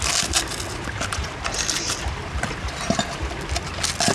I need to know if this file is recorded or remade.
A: recorded